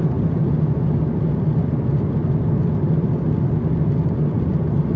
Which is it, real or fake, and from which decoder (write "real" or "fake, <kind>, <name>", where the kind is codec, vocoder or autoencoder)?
real